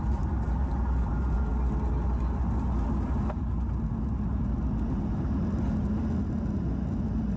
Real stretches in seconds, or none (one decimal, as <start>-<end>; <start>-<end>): 0.0-7.4